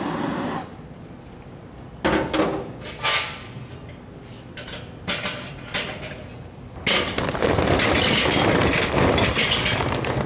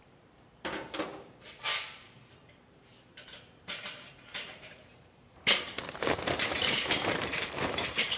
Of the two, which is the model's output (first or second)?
second